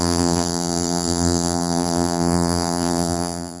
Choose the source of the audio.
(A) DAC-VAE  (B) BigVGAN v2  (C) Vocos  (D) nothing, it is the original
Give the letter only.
B